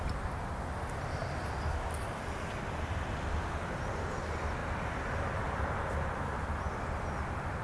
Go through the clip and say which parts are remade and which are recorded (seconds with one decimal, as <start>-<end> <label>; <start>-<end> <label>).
0.0-1.2 recorded; 1.2-2.5 remade; 2.5-4.6 recorded; 4.6-6.8 remade; 6.8-7.6 recorded